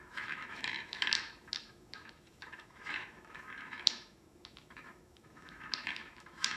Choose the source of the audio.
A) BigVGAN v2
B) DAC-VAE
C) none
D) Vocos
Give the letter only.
B